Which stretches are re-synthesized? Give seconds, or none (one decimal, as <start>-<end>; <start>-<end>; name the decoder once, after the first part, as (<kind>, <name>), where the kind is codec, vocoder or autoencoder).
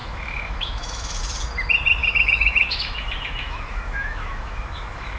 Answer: 0.0-1.2 (autoencoder, DAC-VAE); 2.0-5.2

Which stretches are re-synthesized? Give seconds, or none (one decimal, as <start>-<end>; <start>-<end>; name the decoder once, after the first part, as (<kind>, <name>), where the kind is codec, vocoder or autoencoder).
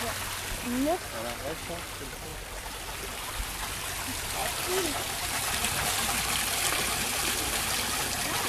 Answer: none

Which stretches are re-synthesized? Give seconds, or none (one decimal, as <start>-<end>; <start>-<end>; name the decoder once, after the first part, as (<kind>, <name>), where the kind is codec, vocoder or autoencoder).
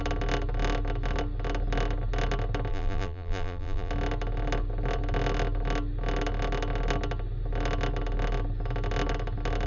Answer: 2.7-3.9 (vocoder, BigVGAN v2)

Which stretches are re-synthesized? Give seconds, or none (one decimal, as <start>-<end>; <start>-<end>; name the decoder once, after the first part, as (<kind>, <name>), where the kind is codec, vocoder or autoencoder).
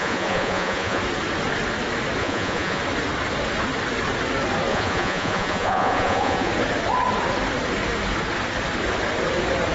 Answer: 0.0-1.0 (vocoder, Vocos); 2.2-2.8; 4.7-6.5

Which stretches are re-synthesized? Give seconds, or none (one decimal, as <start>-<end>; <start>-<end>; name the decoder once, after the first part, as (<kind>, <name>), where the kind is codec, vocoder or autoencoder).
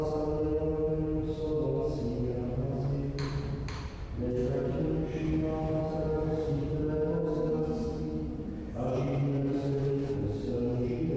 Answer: 9.2-11.2 (vocoder, BigVGAN v2)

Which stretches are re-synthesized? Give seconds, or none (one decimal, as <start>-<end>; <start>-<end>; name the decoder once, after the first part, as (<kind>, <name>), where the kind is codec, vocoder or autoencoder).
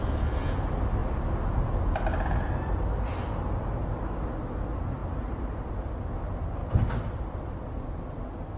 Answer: 1.0-1.7 (vocoder, BigVGAN v2); 5.0-5.9; 6.6-8.0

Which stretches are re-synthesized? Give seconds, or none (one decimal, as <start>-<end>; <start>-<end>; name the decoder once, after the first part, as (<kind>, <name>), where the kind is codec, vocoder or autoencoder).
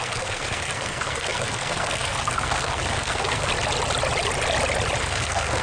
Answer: 0.0-3.5 (codec, SNAC); 5.0-5.6